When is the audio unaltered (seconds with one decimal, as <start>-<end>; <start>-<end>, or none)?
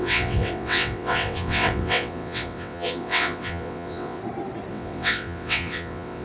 4.2-4.7